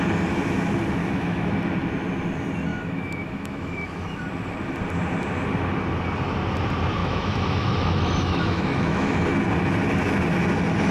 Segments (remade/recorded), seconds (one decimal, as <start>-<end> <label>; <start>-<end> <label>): 0.0-1.0 recorded; 1.0-1.5 remade; 1.5-2.7 recorded; 2.7-4.2 remade; 4.2-7.0 recorded; 7.0-9.2 remade; 9.2-10.9 recorded